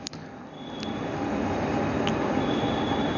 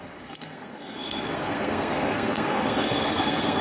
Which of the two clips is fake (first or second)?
second